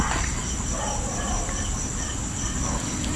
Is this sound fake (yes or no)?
no